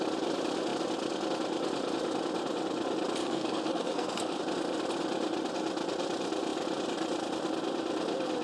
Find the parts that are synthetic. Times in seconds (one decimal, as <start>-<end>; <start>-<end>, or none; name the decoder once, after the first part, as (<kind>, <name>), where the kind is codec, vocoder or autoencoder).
3.2-4.4 (codec, SNAC)